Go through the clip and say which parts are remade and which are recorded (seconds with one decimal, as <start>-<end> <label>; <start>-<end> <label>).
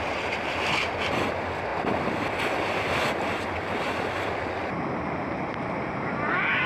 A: 0.0-6.7 recorded